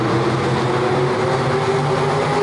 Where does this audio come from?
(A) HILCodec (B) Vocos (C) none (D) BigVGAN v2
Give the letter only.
C